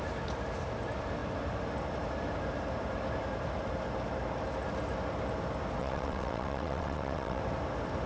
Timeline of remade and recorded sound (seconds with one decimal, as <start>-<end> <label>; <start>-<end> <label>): 0.0-5.8 recorded; 5.8-7.4 remade; 7.4-8.1 recorded